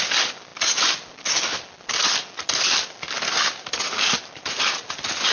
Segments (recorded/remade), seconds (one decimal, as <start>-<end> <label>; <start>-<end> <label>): 0.0-5.3 recorded